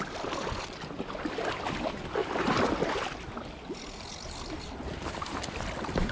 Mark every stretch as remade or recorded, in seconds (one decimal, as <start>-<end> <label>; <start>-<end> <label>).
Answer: 0.0-6.1 recorded